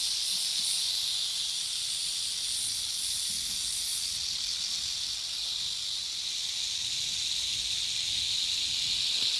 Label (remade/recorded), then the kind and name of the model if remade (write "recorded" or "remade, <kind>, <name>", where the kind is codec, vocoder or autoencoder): recorded